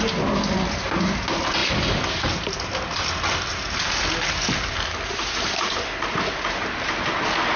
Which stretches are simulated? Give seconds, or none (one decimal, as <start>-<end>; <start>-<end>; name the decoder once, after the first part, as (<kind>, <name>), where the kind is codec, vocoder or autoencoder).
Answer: none